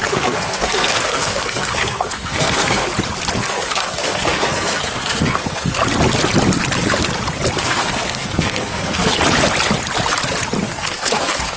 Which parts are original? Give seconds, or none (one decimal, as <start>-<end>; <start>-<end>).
2.9-3.4; 5.8-7.6; 9.1-10.6